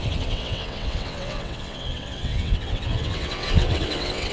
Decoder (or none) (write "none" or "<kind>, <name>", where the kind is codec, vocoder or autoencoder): vocoder, WaveNeXt